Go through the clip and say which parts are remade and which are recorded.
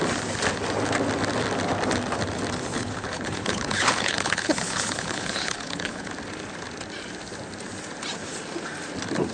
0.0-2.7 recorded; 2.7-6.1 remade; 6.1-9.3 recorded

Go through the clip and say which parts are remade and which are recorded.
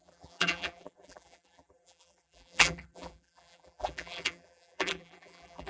0.0-5.7 remade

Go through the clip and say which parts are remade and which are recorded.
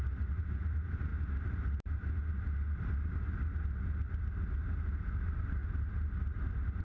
0.0-6.8 recorded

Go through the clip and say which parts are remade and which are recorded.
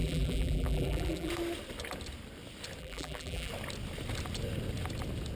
0.0-1.3 remade; 1.3-2.8 recorded; 2.8-3.5 remade; 3.5-5.4 recorded